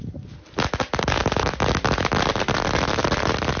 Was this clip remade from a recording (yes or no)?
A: no